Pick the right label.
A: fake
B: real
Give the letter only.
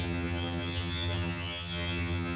A